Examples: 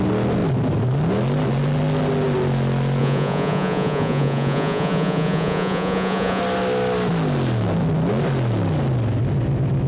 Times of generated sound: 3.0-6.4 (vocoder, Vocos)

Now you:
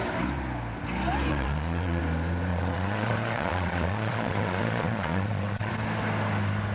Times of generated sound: 1.3-2.0 (vocoder, Vocos); 2.5-5.7